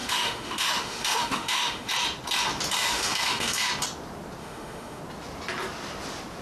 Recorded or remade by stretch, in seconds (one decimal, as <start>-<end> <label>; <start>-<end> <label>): 0.0-1.9 remade; 1.9-2.8 recorded; 2.8-3.7 remade; 3.7-4.4 recorded; 4.4-5.0 remade; 5.0-6.4 recorded